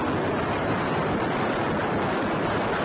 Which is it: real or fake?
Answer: real